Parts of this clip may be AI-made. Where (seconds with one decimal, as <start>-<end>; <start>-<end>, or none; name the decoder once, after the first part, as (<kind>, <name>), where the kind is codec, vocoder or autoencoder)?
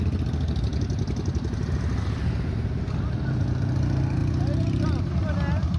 none